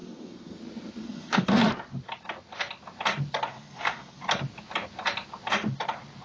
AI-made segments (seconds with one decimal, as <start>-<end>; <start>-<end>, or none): 0.0-0.6; 1.0-1.7; 3.5-4.2